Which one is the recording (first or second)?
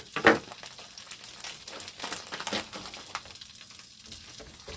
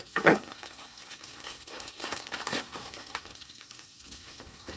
first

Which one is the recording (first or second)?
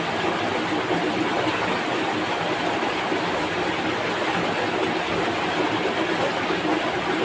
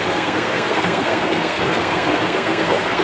first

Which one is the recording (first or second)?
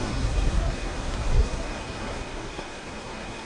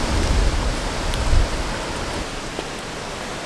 second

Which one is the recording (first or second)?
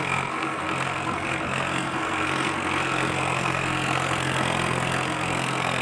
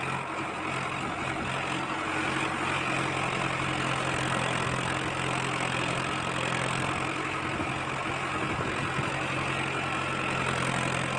second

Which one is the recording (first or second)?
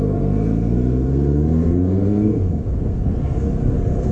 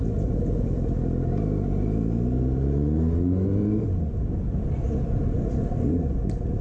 second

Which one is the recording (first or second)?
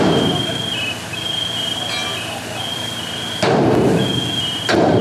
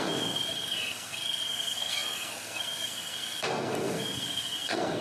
first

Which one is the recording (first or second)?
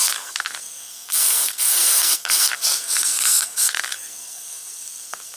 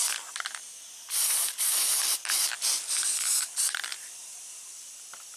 second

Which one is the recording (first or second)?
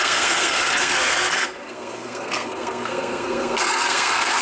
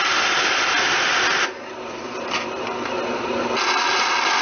second